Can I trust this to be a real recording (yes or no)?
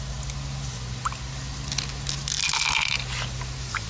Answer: yes